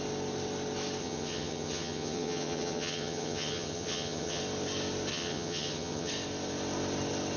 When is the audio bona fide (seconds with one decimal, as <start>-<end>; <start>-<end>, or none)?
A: 0.0-1.0; 4.4-5.1; 6.1-7.4